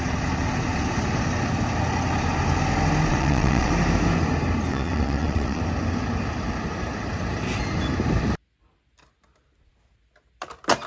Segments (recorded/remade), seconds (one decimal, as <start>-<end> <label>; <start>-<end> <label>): 0.0-3.1 recorded; 3.1-3.7 remade; 3.7-4.7 recorded; 4.7-5.6 remade; 5.6-10.9 recorded